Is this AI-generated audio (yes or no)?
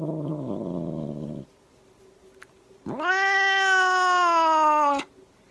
no